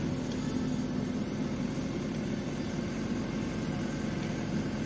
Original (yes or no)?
yes